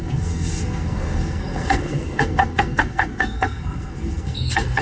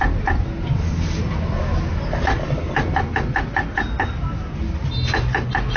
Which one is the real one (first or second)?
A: second